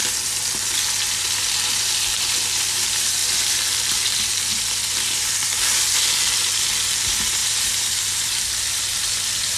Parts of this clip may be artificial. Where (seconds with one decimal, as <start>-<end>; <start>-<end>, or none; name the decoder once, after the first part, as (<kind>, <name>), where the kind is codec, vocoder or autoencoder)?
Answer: 0.0-9.6 (vocoder, BigVGAN v2)

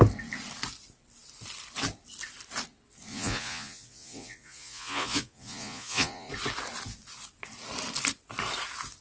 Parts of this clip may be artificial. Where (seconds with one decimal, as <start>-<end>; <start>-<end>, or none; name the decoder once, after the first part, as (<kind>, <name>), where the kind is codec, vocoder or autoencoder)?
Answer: 3.1-6.3 (vocoder, Vocos)

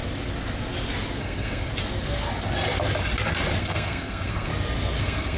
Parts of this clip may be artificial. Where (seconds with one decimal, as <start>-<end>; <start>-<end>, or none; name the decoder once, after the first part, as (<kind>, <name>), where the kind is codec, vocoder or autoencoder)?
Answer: 1.2-1.7 (codec, SNAC); 3.6-4.5; 5.0-5.4

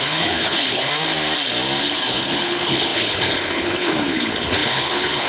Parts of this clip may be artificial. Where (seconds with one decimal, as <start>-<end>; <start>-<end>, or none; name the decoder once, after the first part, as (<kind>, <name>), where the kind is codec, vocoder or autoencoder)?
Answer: 0.0-0.9 (codec, HILCodec); 1.8-5.3

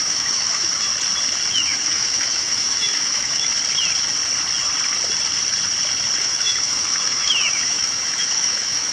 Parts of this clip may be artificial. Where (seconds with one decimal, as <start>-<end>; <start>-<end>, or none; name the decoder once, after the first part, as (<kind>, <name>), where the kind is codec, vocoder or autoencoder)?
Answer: 0.0-0.9 (autoencoder, DAC-VAE); 1.5-3.5; 6.2-8.9